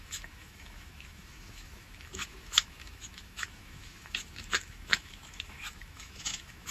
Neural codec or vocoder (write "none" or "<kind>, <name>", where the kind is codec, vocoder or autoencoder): autoencoder, DAC-VAE